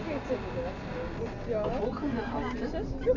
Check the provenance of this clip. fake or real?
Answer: real